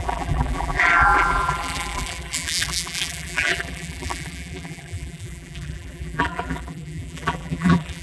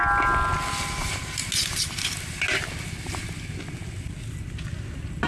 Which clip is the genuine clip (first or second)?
second